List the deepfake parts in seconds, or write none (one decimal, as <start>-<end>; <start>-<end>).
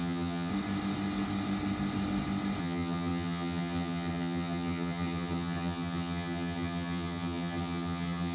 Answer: 0.0-0.5; 2.6-8.3